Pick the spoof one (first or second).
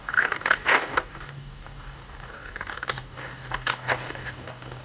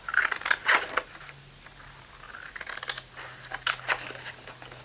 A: first